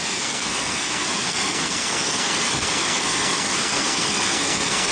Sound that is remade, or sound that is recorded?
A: remade